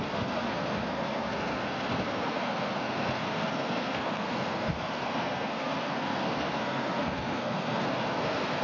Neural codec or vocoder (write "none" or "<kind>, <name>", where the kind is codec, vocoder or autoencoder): codec, SNAC